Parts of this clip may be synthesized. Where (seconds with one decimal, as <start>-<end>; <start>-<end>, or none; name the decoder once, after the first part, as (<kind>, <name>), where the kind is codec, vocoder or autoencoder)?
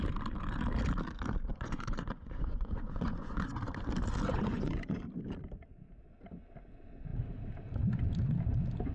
1.5-3.6 (vocoder, Vocos); 4.3-5.0